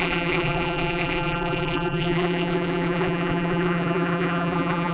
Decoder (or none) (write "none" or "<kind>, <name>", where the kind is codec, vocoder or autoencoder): vocoder, BigVGAN v2